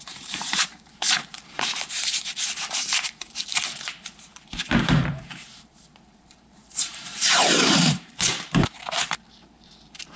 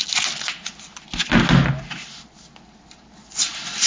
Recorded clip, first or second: second